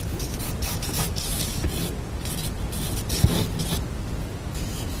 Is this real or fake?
real